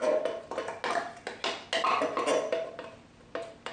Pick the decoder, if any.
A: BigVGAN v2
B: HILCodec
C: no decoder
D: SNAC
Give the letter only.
C